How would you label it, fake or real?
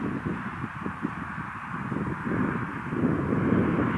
real